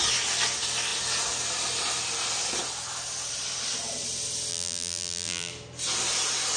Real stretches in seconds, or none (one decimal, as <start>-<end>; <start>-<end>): 0.0-4.5; 5.5-6.6